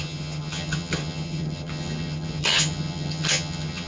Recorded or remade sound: remade